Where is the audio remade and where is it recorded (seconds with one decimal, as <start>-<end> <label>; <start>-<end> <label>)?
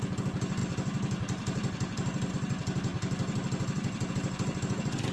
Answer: 0.0-5.1 recorded